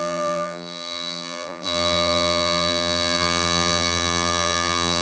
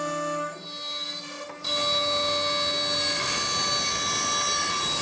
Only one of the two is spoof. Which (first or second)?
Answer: first